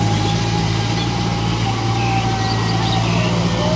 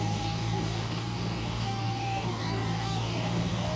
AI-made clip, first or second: second